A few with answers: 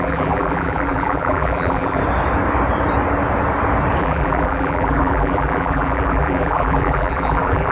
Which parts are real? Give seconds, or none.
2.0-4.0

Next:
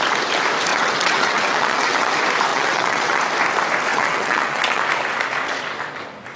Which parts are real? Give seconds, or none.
0.0-0.7; 2.1-2.5; 3.2-3.9; 4.8-6.4

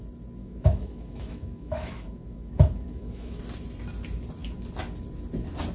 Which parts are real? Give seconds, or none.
0.0-0.4; 3.4-5.7

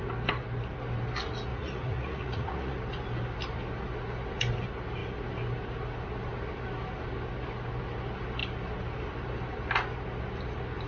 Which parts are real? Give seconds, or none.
0.0-1.5; 2.8-10.9

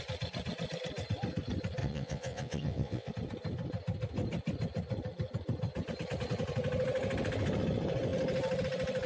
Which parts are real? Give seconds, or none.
0.0-1.8; 3.1-9.1

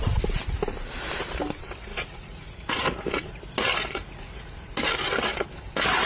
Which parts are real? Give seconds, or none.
0.0-1.9; 3.3-3.8; 4.9-6.1